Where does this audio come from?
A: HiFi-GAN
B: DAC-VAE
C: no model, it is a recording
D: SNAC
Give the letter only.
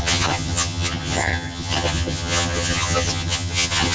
A